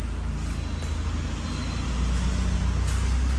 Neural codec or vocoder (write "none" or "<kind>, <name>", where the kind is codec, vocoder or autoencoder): none